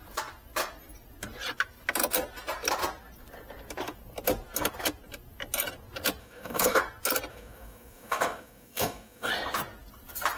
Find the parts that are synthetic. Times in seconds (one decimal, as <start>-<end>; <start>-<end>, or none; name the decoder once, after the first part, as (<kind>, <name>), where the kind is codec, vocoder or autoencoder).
6.2-6.8 (codec, DAC); 7.3-9.3